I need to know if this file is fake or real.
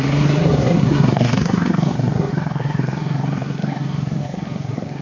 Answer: fake